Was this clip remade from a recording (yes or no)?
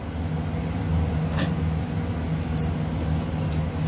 no